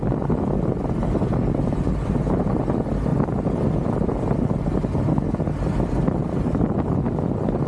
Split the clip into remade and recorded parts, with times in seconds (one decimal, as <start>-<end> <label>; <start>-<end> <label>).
0.0-7.7 recorded